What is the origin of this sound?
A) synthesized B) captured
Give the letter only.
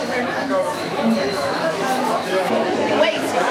A